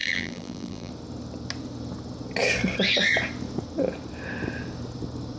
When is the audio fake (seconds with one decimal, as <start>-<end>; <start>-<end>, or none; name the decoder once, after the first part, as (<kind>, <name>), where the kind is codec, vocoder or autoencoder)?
0.0-0.9 (vocoder, BigVGAN v2)

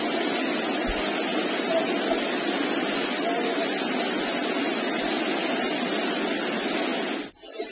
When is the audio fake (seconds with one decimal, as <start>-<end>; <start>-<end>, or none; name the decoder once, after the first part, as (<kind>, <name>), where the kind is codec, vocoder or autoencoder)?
0.0-7.7 (vocoder, BigVGAN v2)